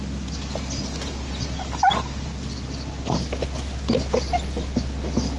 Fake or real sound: real